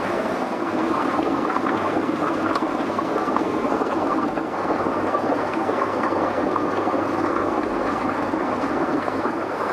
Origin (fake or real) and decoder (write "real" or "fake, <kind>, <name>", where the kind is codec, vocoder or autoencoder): fake, codec, SNAC